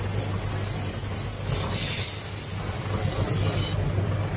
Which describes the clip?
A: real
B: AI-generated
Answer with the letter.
A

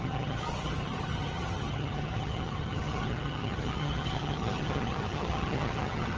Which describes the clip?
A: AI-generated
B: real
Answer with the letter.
A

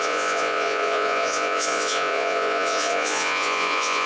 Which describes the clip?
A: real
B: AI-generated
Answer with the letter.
B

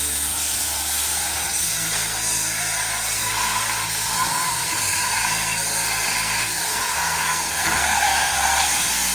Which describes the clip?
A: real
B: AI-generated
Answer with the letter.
B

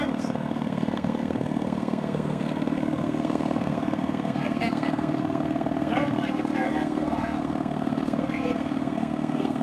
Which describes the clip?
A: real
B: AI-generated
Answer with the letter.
B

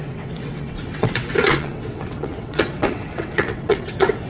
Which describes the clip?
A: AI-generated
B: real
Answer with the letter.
A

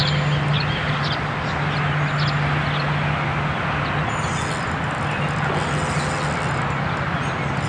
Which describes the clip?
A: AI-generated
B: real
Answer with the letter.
B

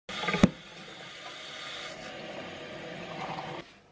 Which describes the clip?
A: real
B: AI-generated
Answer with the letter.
A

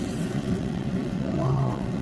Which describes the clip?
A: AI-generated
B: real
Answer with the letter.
A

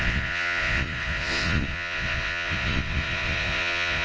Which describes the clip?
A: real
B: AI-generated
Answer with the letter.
B